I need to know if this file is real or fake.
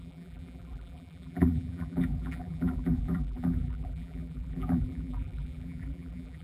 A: fake